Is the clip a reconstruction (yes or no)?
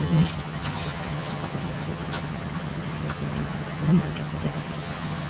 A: yes